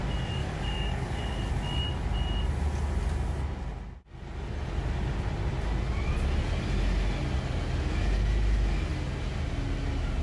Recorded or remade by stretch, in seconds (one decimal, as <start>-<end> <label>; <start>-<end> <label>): 0.0-0.4 recorded; 0.4-1.5 remade; 1.5-10.2 recorded